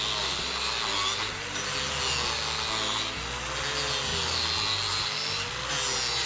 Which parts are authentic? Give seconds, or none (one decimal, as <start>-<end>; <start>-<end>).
0.0-6.3